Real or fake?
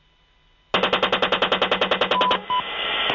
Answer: real